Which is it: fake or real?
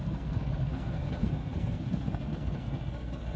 fake